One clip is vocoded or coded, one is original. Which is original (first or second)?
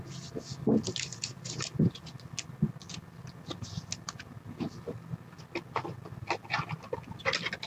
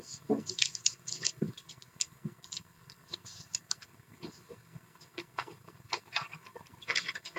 first